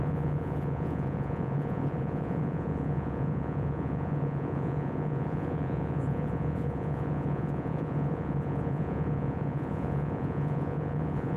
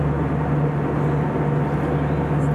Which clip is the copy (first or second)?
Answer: first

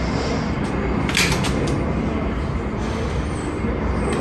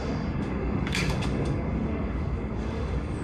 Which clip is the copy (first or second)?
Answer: second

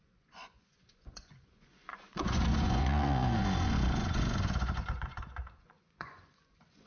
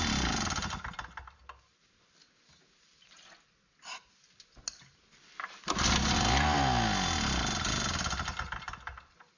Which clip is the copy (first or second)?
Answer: first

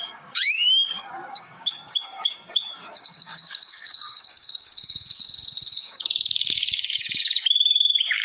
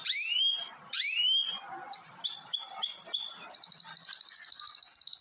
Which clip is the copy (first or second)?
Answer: first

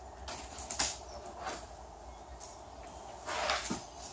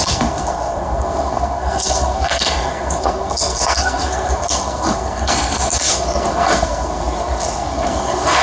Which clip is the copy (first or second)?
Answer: second